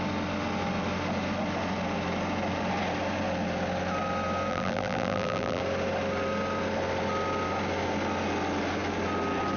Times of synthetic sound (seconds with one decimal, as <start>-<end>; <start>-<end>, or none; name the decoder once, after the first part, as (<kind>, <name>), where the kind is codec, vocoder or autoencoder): 4.5-5.6 (vocoder, BigVGAN v2)